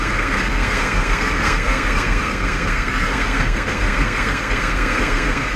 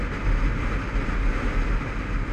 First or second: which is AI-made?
first